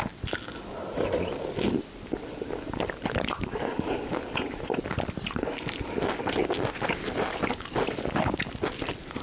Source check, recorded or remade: recorded